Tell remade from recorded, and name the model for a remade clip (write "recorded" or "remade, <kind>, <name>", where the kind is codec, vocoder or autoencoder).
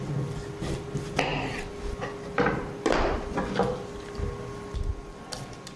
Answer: recorded